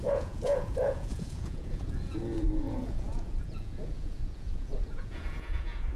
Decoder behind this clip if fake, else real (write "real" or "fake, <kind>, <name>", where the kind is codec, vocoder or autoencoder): fake, vocoder, Vocos